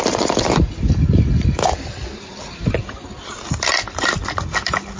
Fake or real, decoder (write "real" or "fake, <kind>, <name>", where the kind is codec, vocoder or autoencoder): real